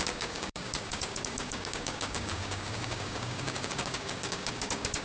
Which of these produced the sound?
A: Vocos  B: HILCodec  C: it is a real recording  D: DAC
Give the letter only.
D